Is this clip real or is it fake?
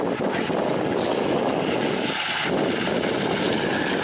real